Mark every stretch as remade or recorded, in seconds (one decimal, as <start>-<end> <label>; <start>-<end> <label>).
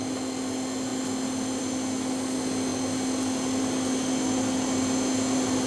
0.0-5.7 recorded